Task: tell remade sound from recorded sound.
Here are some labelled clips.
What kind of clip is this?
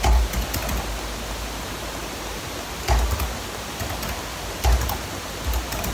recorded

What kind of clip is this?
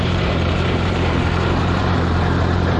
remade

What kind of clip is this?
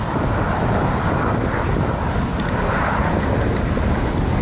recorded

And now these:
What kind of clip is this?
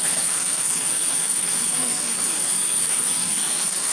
remade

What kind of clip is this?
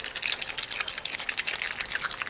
recorded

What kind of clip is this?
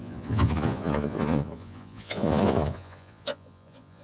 remade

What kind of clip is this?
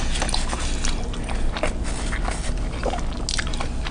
recorded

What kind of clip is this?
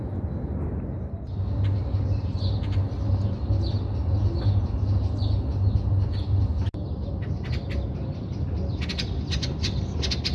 recorded